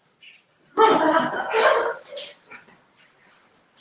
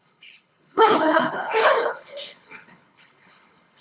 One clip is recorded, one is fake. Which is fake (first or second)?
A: second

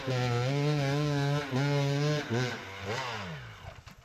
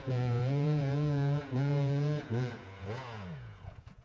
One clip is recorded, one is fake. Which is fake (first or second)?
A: second